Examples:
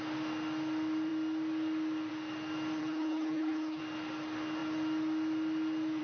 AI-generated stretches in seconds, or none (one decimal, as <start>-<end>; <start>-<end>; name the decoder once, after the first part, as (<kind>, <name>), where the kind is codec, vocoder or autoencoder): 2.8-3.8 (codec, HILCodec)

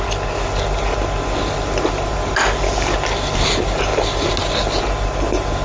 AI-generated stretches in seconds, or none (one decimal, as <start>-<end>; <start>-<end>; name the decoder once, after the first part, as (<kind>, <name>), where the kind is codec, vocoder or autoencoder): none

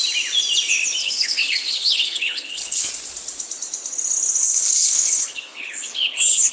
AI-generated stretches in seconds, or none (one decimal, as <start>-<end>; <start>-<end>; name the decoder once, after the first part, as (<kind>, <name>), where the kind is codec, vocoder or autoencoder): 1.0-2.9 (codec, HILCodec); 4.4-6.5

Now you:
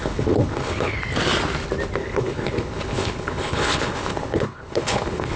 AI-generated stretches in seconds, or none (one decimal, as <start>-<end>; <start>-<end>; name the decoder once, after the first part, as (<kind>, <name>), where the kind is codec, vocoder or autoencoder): 0.0-1.0 (codec, HILCodec); 2.0-5.4